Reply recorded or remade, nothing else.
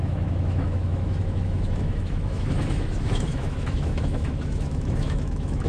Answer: remade